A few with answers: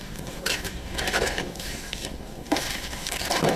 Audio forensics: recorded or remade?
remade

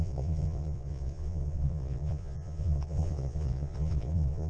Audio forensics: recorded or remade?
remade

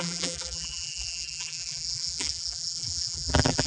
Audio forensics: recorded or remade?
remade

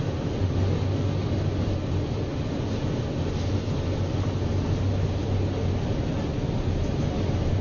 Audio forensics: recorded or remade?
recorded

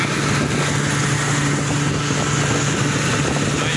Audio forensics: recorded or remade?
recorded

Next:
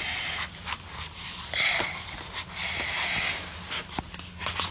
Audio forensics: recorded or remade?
recorded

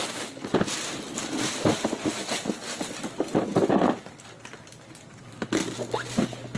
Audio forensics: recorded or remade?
recorded